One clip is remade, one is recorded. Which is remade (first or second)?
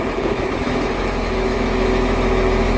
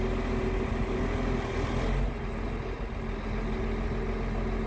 first